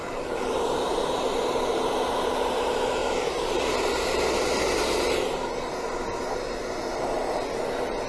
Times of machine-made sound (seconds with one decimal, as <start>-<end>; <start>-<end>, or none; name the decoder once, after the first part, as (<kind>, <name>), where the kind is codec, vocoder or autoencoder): none